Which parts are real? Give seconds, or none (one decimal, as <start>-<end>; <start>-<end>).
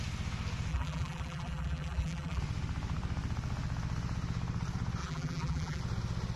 0.0-0.7; 2.4-5.0; 5.8-6.4